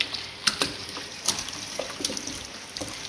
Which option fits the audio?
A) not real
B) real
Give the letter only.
A